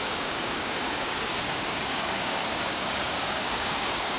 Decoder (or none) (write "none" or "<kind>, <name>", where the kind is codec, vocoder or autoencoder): codec, DAC